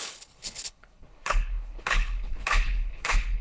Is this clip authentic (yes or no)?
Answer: no